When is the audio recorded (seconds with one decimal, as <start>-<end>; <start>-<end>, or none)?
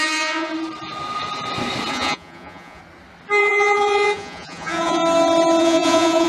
0.5-1.9; 2.8-3.4; 5.0-5.6